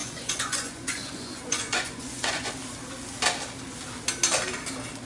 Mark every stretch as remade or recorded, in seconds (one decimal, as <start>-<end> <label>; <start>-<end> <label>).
0.0-2.5 remade; 2.5-5.0 recorded